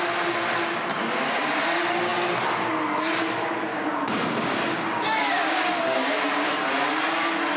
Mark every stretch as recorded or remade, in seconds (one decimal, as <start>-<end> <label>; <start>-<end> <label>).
0.0-3.7 recorded; 3.7-6.5 remade; 6.5-7.6 recorded